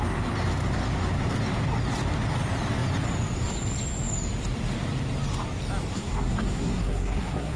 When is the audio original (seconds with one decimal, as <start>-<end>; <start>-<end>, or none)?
0.0-5.9